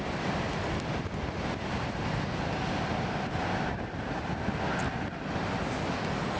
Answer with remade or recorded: recorded